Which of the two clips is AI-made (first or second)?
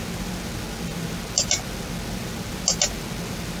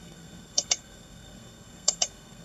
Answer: second